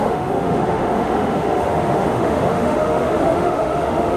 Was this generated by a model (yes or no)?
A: yes